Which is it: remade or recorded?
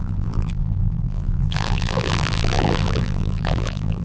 remade